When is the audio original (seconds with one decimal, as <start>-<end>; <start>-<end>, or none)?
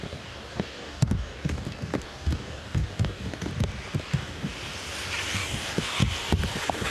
3.5-4.0; 4.5-5.3; 6.0-6.9